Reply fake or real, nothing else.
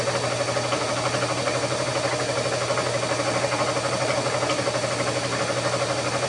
real